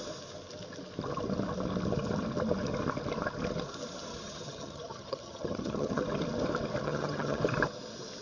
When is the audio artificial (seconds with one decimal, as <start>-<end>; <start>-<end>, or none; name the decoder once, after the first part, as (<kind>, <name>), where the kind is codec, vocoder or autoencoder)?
4.1-6.0 (vocoder, HiFi-GAN); 6.8-7.4